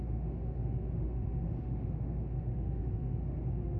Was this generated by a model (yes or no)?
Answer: yes